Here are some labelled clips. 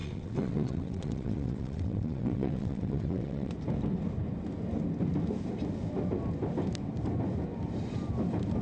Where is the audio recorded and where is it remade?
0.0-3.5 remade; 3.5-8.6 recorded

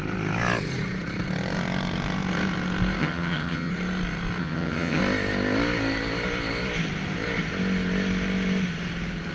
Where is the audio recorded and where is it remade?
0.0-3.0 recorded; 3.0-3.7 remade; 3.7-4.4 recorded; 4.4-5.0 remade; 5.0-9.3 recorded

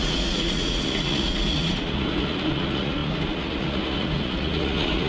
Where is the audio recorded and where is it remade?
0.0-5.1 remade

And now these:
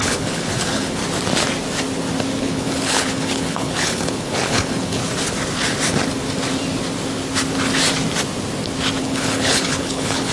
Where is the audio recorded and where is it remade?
0.0-1.0 remade; 1.0-2.4 recorded; 2.4-5.0 remade; 5.0-9.0 recorded; 9.0-10.3 remade